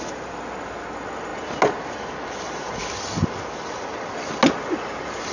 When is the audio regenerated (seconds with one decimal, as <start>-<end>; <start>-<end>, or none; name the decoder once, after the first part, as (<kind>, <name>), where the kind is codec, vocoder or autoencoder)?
none